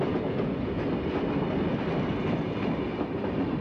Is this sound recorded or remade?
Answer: recorded